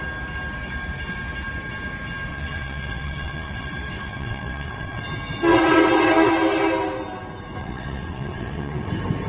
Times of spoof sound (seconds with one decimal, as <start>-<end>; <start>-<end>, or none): 2.3-5.0; 5.5-6.3; 7.6-8.9